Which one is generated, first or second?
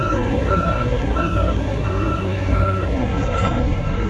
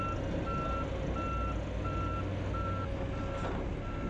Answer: first